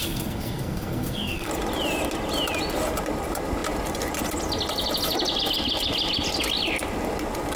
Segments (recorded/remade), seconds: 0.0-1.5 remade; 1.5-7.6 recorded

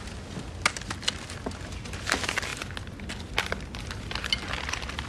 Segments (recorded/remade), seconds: 0.0-5.1 recorded

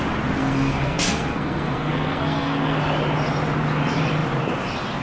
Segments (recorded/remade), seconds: 0.0-0.4 recorded; 0.4-2.8 remade; 2.8-5.0 recorded

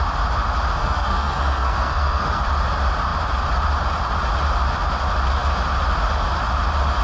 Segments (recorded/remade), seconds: 0.0-0.8 recorded; 0.8-2.4 remade; 2.4-7.0 recorded

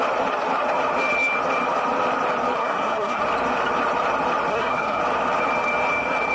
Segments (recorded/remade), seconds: 0.0-2.6 recorded; 2.6-3.2 remade; 3.2-4.5 recorded; 4.5-5.0 remade; 5.0-6.3 recorded

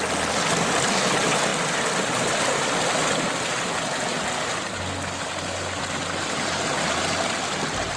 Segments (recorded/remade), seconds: 0.0-8.0 recorded

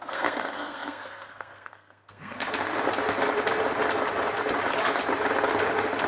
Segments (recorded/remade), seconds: 0.0-2.4 remade; 2.4-6.1 recorded

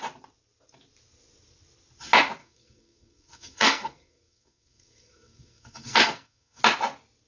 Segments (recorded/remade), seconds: 0.0-2.4 recorded; 2.4-6.6 remade; 6.6-7.3 recorded